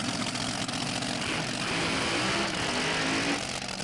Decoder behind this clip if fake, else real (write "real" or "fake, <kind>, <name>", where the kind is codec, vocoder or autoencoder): real